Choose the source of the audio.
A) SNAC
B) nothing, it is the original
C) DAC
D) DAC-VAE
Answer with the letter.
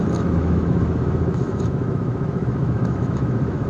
D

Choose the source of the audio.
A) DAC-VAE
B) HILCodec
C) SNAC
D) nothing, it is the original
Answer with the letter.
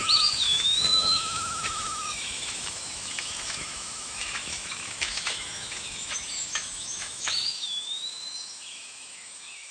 A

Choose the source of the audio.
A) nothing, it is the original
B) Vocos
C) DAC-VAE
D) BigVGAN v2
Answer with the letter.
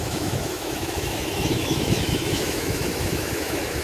C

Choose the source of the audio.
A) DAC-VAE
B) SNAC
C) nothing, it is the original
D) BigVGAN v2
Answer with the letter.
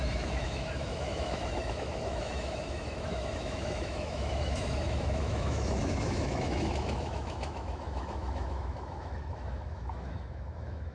A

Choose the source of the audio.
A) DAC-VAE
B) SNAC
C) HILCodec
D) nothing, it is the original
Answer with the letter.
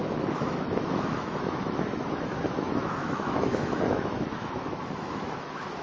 A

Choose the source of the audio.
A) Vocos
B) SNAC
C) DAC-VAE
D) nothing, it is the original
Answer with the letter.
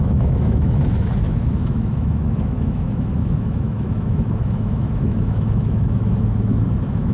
C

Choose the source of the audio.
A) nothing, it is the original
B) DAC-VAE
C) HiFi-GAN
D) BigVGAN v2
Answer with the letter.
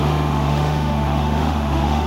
B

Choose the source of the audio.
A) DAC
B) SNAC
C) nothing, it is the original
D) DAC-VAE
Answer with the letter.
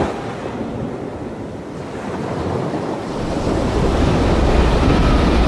C